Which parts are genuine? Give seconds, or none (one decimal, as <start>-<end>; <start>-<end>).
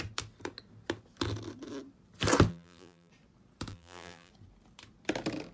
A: 0.0-2.5; 3.1-3.7; 4.3-5.5